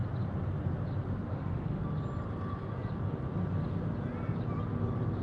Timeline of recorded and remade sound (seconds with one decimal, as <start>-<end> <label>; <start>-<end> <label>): 0.0-1.3 recorded; 1.3-1.8 remade; 1.8-5.2 recorded